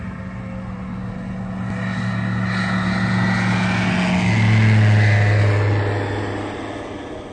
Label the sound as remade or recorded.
recorded